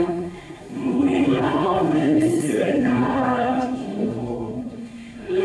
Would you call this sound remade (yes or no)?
yes